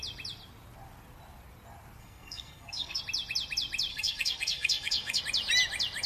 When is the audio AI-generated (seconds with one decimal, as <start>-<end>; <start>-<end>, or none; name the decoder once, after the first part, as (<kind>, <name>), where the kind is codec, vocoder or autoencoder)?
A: 2.0-3.0 (codec, SNAC); 3.9-5.2